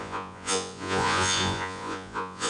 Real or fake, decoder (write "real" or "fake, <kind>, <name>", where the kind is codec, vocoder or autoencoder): fake, vocoder, Vocos